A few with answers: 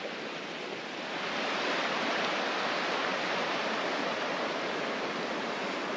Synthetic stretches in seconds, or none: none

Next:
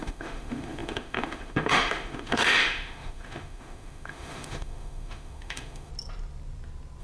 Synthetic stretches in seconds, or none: 0.0-5.9 (autoencoder, DAC-VAE)

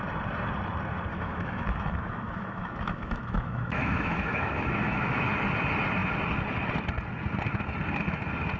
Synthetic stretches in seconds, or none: 1.1-5.3 (autoencoder, DAC-VAE)

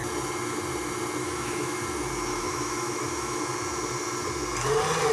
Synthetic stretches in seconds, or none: 1.2-1.8 (autoencoder, DAC-VAE); 2.3-3.4

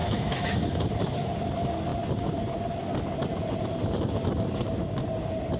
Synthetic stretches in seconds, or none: 0.0-0.8 (autoencoder, DAC-VAE)

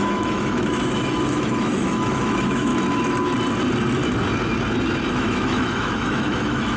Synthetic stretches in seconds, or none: 0.0-2.7 (autoencoder, DAC-VAE); 5.1-6.8